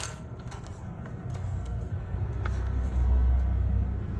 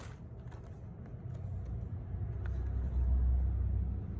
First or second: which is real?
second